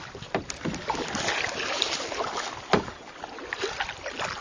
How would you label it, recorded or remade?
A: recorded